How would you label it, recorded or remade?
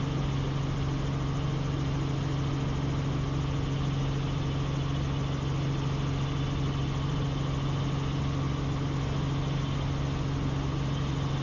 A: recorded